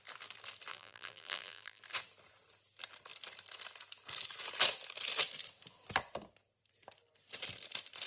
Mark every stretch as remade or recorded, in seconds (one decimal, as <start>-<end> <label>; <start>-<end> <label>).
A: 0.0-0.7 recorded; 0.7-1.8 remade; 1.8-8.1 recorded